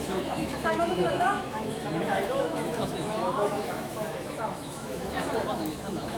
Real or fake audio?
fake